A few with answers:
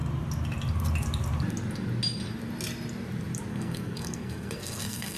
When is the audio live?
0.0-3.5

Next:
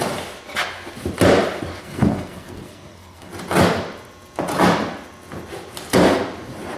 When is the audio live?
0.0-1.8; 3.3-6.8

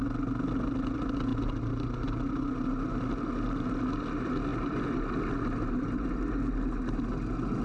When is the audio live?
0.0-7.6